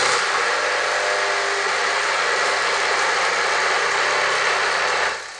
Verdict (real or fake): real